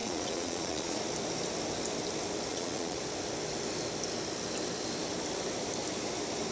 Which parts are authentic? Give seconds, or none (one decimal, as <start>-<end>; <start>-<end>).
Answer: 1.0-2.5; 3.0-6.5